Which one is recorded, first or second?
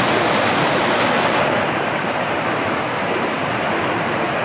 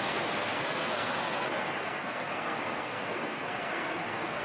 first